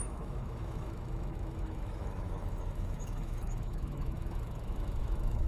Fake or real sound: fake